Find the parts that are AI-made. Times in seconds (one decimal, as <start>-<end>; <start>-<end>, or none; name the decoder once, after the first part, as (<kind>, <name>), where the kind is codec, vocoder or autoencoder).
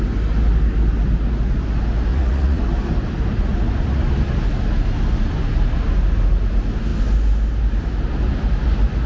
2.1-2.6 (vocoder, Vocos)